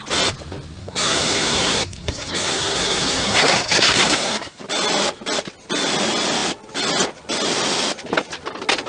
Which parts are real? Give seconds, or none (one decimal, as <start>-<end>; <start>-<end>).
0.0-0.8; 4.6-8.9